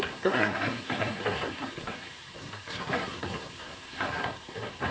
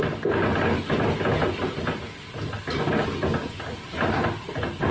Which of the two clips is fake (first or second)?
first